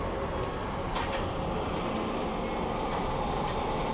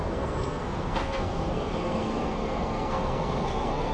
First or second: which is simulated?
second